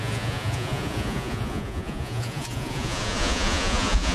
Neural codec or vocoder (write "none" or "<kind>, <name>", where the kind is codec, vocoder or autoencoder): vocoder, Vocos